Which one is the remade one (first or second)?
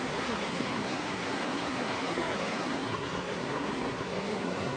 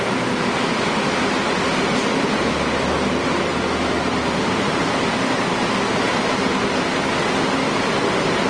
first